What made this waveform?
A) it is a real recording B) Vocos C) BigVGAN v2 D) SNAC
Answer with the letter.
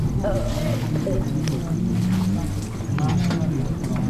A